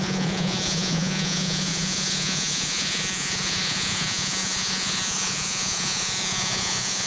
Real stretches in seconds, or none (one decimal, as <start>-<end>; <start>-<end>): none